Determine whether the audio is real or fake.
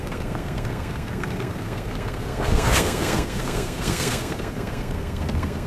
fake